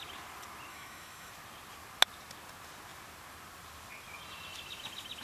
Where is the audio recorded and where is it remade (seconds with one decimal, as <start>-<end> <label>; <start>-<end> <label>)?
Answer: 0.0-0.7 recorded; 0.7-1.3 remade; 1.3-5.2 recorded